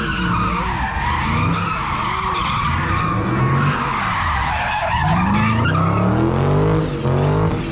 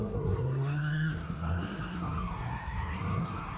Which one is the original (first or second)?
first